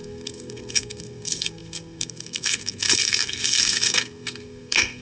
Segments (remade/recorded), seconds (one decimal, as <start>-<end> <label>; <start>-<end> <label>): 0.0-5.0 remade